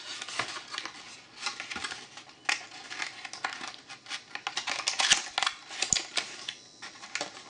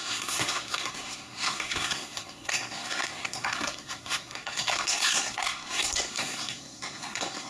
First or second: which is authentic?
first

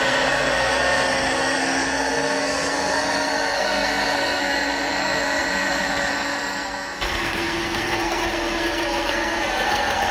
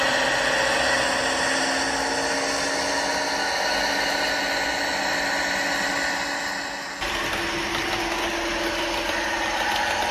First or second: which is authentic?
second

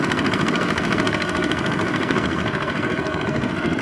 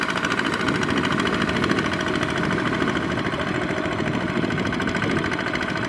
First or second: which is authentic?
second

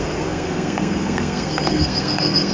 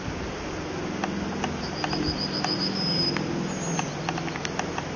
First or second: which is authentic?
second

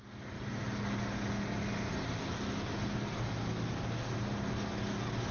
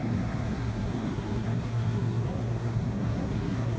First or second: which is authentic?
first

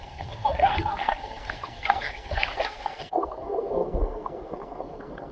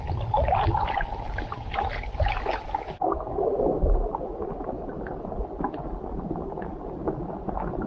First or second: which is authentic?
second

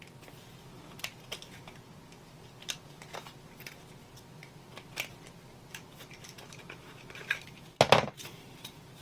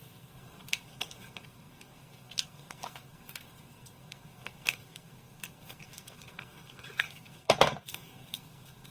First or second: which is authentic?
first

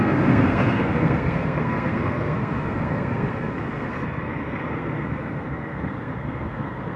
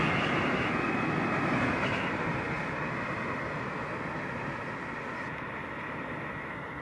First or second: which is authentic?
second